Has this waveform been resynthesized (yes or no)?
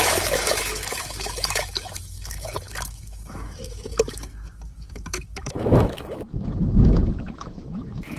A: yes